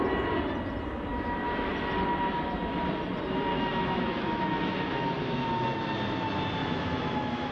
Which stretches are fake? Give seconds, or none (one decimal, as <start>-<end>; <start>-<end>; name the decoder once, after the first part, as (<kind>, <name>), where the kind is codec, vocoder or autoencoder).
1.1-1.7 (autoencoder, DAC-VAE); 3.5-5.5; 6.6-7.5